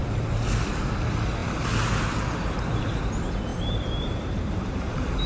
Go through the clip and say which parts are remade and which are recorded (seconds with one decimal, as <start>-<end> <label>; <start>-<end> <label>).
0.0-3.5 recorded; 3.5-5.3 remade